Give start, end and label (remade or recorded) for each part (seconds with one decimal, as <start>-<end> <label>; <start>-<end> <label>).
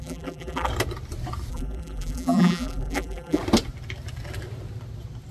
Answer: 0.0-0.7 remade; 0.7-1.5 recorded; 1.5-3.4 remade; 3.4-5.3 recorded